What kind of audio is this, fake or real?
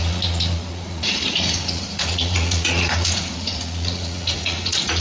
fake